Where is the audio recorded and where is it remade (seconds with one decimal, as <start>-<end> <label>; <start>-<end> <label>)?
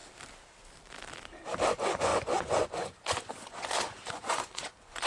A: 0.0-1.7 recorded; 1.7-5.1 remade